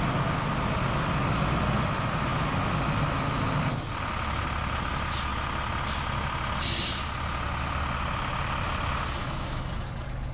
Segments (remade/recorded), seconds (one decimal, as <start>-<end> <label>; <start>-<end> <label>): 0.0-9.2 recorded; 9.2-9.7 remade; 9.7-10.3 recorded